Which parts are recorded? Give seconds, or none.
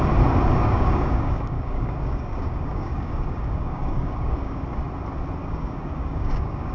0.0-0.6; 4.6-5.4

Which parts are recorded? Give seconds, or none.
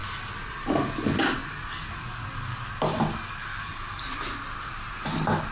0.0-5.5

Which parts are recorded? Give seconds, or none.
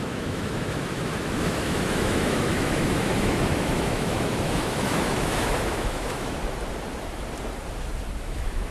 6.4-8.2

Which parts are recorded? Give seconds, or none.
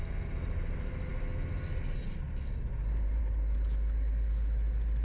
0.0-5.0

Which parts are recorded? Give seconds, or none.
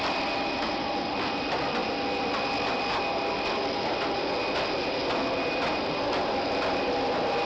0.0-7.4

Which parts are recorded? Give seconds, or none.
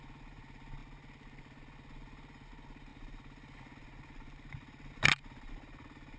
0.0-6.2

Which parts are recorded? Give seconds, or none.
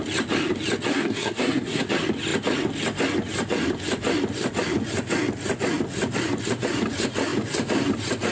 0.0-0.9; 1.9-8.3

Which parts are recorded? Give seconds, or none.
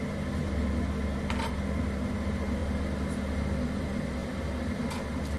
0.0-5.4